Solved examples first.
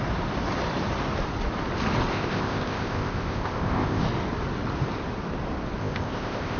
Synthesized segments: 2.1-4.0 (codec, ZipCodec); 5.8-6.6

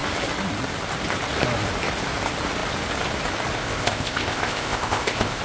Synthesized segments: 3.6-5.4 (codec, ZipCodec)

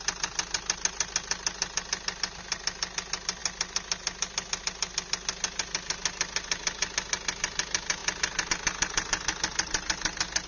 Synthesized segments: none

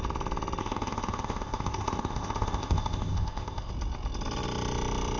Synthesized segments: 0.6-3.7 (codec, ZipCodec)

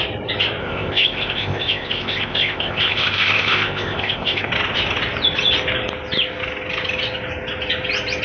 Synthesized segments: 0.6-4.5 (codec, ZipCodec)

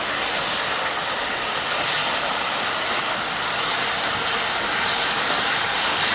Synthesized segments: none

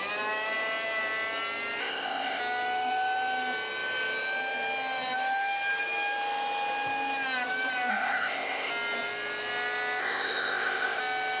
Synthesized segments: 1.8-2.4 (codec, ZipCodec); 7.9-8.7; 10.0-11.0